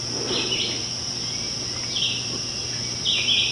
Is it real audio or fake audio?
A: real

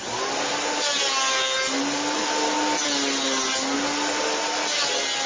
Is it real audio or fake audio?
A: real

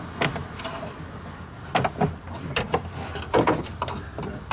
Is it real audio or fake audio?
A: real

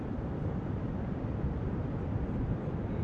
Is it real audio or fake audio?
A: fake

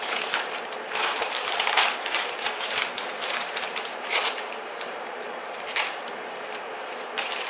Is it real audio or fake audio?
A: fake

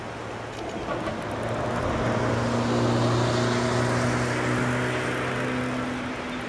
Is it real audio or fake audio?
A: real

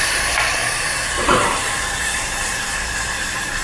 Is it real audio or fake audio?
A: fake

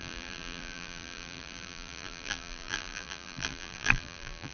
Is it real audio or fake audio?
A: fake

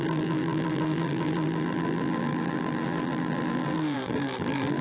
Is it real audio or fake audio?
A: fake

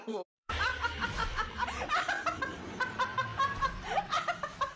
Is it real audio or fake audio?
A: fake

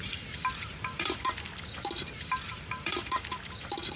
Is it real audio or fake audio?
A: fake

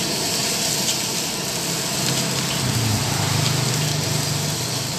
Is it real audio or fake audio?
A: real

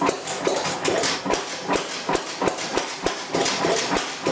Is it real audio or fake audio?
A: real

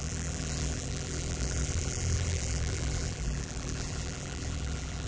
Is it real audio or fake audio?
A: fake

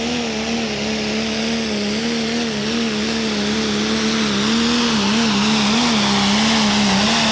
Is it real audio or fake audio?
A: real